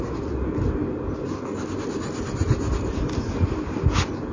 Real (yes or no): yes